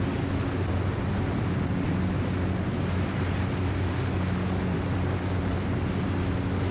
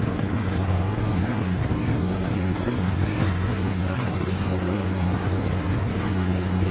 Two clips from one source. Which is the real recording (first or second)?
first